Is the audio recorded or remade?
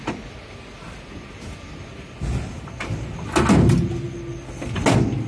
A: recorded